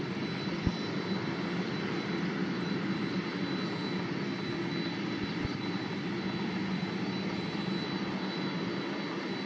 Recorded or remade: recorded